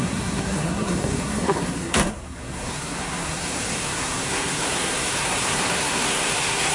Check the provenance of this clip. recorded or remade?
remade